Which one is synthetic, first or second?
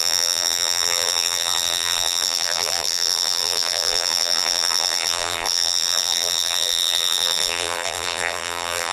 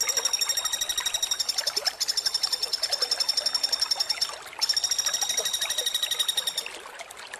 first